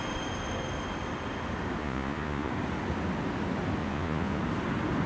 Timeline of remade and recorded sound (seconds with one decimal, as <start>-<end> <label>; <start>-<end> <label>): 0.0-1.8 recorded; 1.8-2.5 remade; 2.5-3.8 recorded; 3.8-4.4 remade; 4.4-5.1 recorded